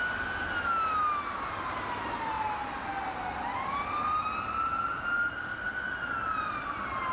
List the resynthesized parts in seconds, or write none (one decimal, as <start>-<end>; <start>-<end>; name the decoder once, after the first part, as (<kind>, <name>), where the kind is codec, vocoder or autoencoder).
none